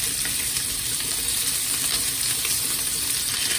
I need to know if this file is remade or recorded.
recorded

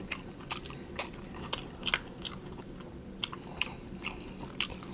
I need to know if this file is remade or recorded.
recorded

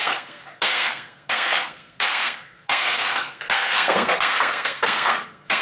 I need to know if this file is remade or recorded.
remade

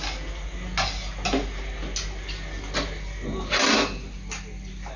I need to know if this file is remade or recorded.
recorded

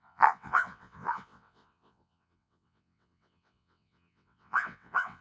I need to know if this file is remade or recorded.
remade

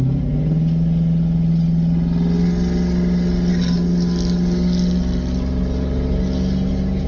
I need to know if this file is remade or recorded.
recorded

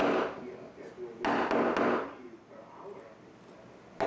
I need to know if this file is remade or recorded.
recorded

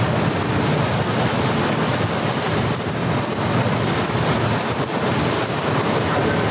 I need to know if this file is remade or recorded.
recorded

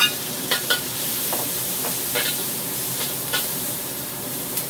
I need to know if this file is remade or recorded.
remade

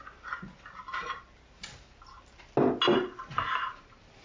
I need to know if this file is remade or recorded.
recorded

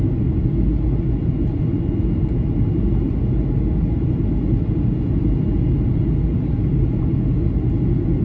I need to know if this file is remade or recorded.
recorded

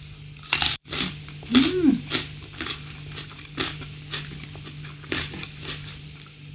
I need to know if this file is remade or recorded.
remade